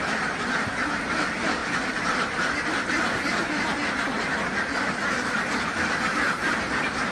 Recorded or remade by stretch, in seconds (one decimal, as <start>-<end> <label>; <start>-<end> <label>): 0.0-1.0 recorded; 1.0-1.6 remade; 1.6-5.9 recorded; 5.9-7.1 remade